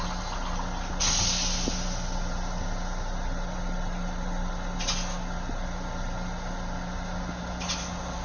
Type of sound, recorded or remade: recorded